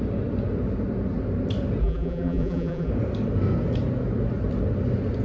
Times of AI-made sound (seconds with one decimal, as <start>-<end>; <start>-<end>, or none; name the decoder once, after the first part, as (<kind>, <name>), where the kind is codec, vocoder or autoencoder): 1.8-2.9 (vocoder, BigVGAN v2)